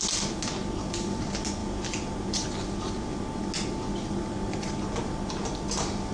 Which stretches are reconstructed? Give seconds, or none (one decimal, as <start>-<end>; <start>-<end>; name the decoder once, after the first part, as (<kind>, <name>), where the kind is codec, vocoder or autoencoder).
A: none